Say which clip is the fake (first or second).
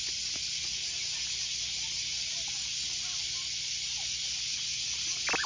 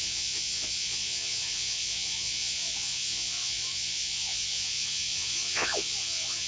second